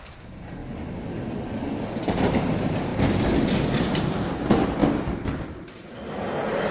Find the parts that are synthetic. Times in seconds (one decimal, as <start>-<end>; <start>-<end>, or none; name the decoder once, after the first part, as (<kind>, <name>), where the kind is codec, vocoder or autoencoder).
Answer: 0.0-0.6 (vocoder, BigVGAN v2); 1.7-4.8; 5.5-6.7